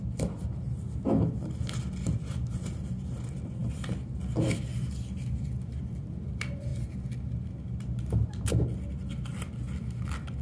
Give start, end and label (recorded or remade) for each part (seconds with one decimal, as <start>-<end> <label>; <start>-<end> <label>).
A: 0.0-10.4 recorded